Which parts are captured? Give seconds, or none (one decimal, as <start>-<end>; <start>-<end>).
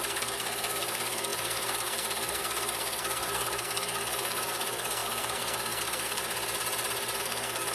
6.2-7.2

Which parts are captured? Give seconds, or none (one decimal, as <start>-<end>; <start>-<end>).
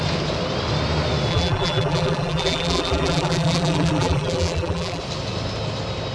0.0-1.3; 5.0-6.1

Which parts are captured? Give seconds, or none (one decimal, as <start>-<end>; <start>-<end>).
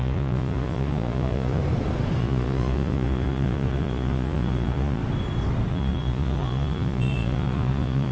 1.6-2.2; 5.0-5.7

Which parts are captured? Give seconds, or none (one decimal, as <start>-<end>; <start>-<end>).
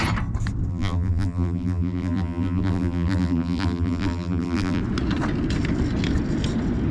0.0-0.7; 4.8-6.9